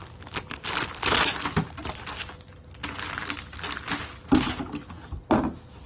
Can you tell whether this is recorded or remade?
recorded